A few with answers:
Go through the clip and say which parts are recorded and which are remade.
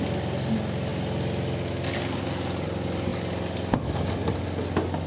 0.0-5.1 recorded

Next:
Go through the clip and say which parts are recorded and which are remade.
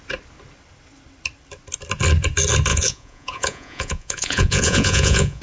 0.0-2.7 recorded; 2.7-5.4 remade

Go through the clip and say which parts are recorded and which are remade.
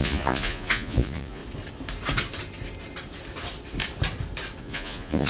0.0-1.4 remade; 1.4-4.6 recorded; 4.6-5.3 remade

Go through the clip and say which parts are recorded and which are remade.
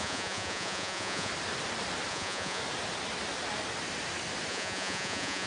0.0-1.3 remade; 1.3-2.1 recorded; 2.1-2.6 remade; 2.6-4.5 recorded; 4.5-5.5 remade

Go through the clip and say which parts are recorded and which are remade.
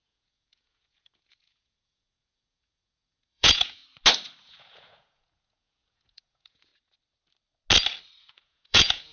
0.0-3.8 remade; 3.8-4.4 recorded; 4.4-6.7 remade; 6.7-8.2 recorded; 8.2-9.1 remade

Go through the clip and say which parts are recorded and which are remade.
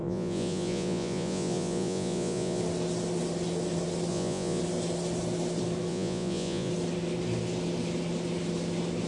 0.0-2.6 remade; 2.6-4.1 recorded; 4.1-4.6 remade; 4.6-5.9 recorded; 5.9-6.7 remade; 6.7-9.1 recorded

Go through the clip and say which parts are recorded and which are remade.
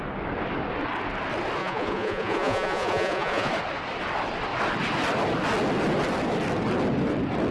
0.0-1.6 recorded; 1.6-3.5 remade; 3.5-7.5 recorded